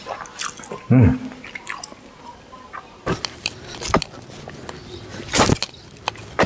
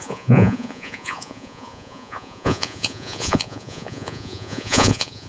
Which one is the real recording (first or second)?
first